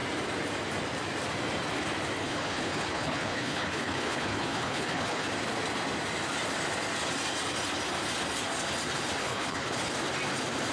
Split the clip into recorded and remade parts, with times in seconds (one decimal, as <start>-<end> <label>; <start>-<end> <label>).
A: 0.0-2.2 recorded; 2.2-5.3 remade; 5.3-9.2 recorded; 9.2-9.9 remade; 9.9-10.7 recorded